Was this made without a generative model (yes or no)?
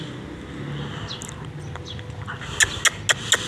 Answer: yes